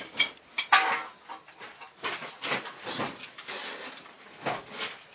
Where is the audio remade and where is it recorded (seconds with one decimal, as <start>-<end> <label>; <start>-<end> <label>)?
0.0-1.0 recorded; 1.0-4.1 remade; 4.1-5.1 recorded